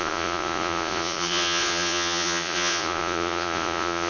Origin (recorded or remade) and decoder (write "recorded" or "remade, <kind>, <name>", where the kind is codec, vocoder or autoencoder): remade, vocoder, Vocos